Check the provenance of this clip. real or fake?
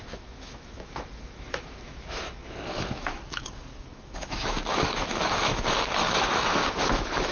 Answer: fake